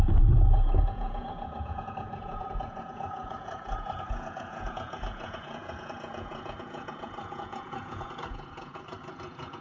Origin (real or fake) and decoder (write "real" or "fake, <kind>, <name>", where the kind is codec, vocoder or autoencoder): fake, vocoder, Vocos